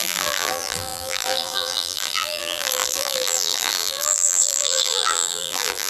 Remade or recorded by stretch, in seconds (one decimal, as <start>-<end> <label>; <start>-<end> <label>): 0.0-5.9 remade